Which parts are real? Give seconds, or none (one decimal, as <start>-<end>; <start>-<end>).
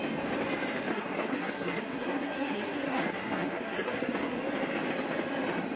0.0-0.9; 4.4-5.8